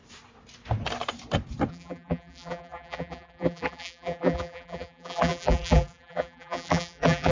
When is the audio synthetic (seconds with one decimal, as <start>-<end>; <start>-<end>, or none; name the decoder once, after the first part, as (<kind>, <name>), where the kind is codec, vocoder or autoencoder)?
1.7-7.3 (vocoder, BigVGAN v2)